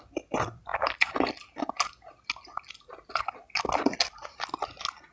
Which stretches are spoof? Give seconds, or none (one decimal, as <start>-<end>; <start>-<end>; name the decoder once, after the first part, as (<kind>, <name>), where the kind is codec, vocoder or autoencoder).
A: none